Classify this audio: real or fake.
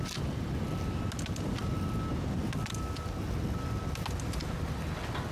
real